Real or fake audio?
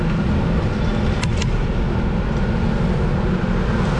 real